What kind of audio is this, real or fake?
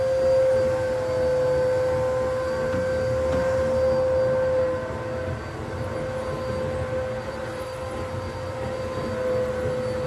real